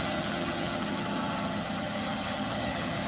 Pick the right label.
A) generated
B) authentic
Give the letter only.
A